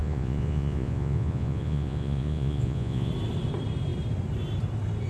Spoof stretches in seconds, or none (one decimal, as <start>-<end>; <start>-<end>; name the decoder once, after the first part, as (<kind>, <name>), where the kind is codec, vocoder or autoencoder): 0.0-3.1 (vocoder, Vocos)